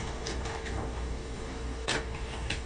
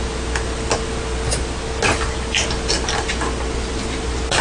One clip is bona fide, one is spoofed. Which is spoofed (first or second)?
first